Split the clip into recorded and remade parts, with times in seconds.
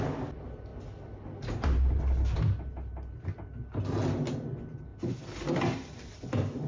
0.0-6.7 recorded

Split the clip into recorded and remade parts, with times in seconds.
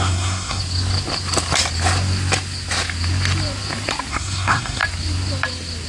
0.0-0.6 remade; 0.6-4.1 recorded; 4.1-4.8 remade; 4.8-5.9 recorded